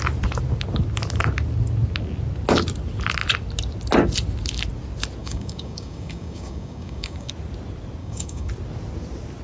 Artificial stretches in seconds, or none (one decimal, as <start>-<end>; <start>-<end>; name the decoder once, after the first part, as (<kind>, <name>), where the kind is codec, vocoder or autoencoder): 5.2-7.3 (codec, DAC); 8.0-8.5